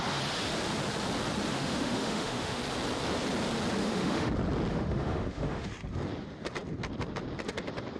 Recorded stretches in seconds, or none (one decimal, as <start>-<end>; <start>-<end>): 0.0-1.5; 2.6-3.8; 4.3-4.7; 5.7-8.0